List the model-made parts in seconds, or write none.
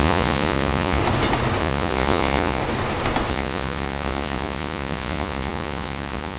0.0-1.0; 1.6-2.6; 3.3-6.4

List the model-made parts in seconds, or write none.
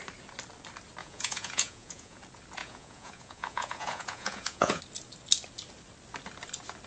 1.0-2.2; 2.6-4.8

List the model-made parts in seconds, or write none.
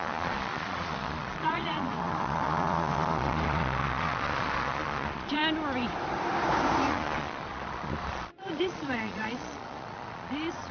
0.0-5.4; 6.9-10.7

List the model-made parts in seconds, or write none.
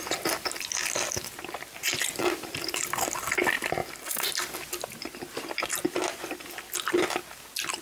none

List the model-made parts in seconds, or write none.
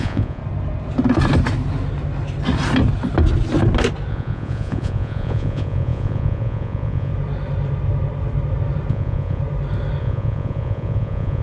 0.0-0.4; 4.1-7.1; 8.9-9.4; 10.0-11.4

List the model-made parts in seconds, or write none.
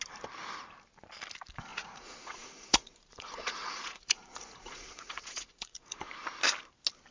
1.7-6.0